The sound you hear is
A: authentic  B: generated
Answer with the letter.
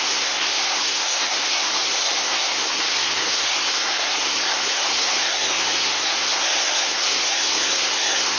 B